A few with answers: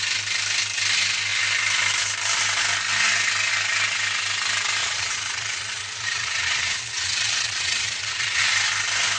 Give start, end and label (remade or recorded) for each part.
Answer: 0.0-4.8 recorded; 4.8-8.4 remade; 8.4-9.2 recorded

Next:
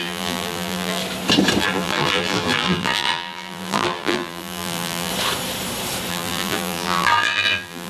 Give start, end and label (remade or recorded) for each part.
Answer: 0.0-1.0 remade; 1.0-1.6 recorded; 1.6-5.1 remade; 5.1-6.1 recorded; 6.1-7.9 remade

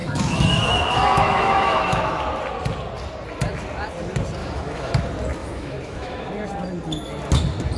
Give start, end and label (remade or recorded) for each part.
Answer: 0.0-2.2 remade; 2.2-4.4 recorded; 4.4-5.0 remade; 5.0-5.4 recorded; 5.4-6.3 remade; 6.3-7.8 recorded

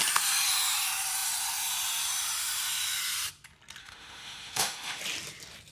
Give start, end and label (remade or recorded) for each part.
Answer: 0.0-3.8 recorded; 3.8-5.0 remade; 5.0-5.7 recorded

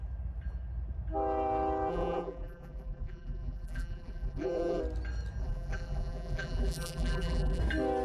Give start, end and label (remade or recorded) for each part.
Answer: 0.0-1.9 recorded; 1.9-4.8 remade; 4.8-5.4 recorded; 5.4-7.6 remade; 7.6-8.0 recorded

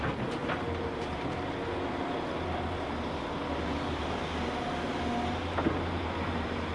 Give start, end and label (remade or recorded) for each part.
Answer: 0.0-0.4 recorded; 0.4-4.0 remade; 4.0-6.7 recorded